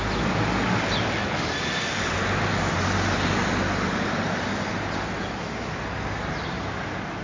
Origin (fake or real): real